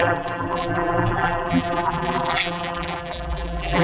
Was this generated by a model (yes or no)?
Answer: yes